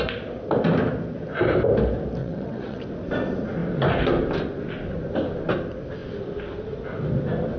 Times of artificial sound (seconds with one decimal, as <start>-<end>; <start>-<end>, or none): 2.2-2.8